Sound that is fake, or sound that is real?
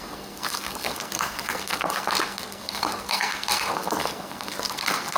fake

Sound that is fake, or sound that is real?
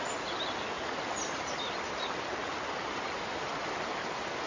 real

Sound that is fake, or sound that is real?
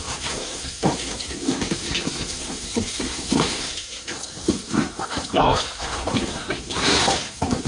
fake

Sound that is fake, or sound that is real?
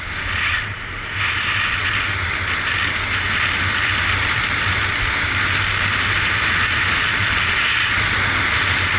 real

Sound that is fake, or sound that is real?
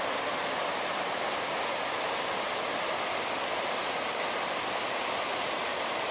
real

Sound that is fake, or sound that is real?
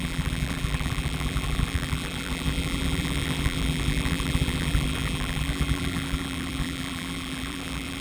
fake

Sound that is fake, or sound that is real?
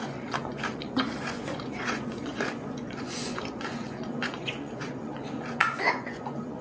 fake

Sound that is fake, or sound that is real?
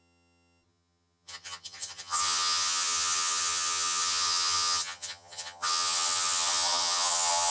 fake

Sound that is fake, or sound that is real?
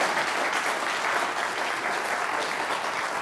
real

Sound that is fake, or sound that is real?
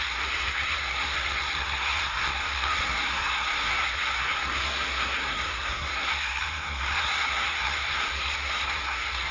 fake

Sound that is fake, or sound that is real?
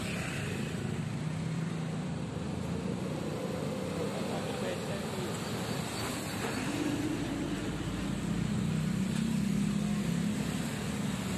real